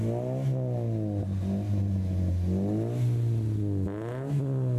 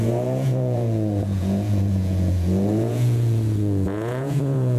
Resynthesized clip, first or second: second